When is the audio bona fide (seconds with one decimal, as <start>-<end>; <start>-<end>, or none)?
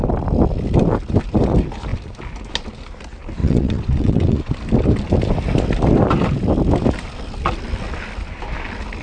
0.0-3.4; 4.5-9.0